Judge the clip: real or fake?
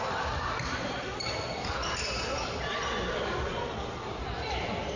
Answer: real